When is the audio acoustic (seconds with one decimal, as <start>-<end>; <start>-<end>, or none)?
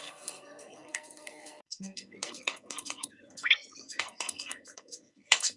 none